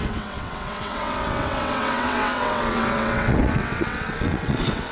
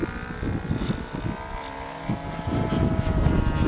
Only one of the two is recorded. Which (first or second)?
second